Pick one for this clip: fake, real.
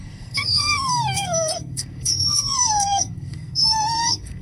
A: fake